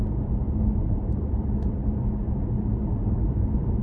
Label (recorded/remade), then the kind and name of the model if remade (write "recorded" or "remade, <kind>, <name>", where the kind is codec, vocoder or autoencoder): recorded